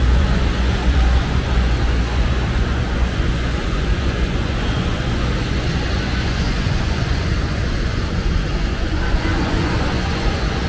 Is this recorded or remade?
remade